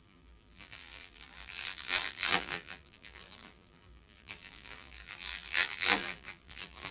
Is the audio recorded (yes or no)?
no